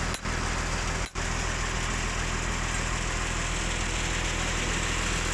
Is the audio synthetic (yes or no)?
no